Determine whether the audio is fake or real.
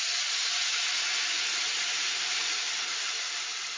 real